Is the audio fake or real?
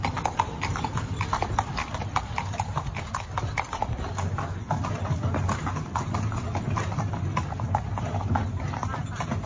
real